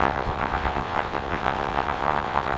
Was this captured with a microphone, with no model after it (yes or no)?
no